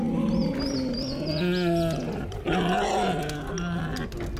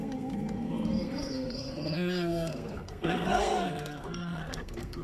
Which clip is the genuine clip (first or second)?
first